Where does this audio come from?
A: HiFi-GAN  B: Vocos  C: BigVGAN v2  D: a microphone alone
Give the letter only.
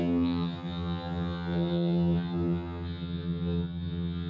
A